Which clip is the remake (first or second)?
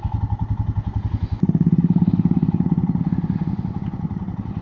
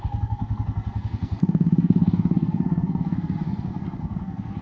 second